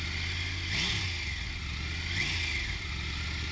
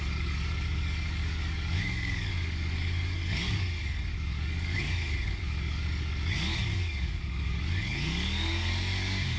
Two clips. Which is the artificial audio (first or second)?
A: second